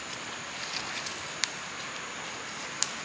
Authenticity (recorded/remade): recorded